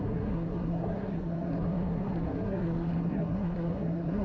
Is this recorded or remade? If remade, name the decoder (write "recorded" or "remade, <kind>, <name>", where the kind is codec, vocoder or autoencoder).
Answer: remade, codec, SNAC